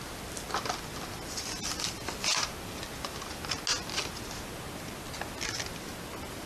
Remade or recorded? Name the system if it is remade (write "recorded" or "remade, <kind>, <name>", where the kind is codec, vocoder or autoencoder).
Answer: recorded